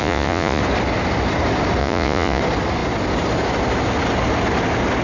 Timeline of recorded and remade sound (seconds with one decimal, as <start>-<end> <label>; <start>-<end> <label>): 0.0-0.6 remade; 0.6-1.8 recorded; 1.8-2.4 remade; 2.4-5.0 recorded

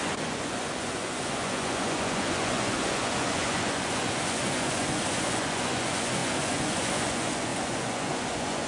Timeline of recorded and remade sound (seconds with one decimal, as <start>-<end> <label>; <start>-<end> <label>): 0.0-8.7 remade

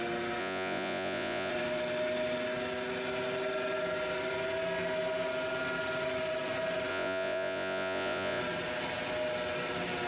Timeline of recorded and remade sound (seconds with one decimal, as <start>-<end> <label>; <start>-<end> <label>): 0.0-0.4 recorded; 0.4-1.5 remade; 1.5-6.9 recorded; 6.9-8.4 remade; 8.4-10.1 recorded

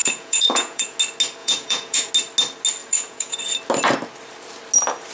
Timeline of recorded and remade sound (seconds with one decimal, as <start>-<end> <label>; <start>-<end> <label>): 0.0-1.0 remade; 1.0-1.4 recorded; 1.4-2.1 remade; 2.1-2.8 recorded; 2.8-3.4 remade; 3.4-5.1 recorded

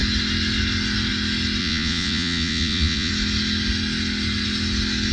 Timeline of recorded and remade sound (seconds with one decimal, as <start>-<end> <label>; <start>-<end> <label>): 0.0-1.6 recorded; 1.6-3.1 remade; 3.1-5.1 recorded

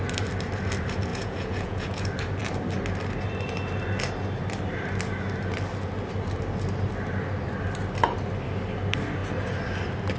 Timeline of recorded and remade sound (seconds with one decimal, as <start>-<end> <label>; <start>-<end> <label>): 0.0-1.1 recorded; 1.1-2.0 remade; 2.0-10.2 recorded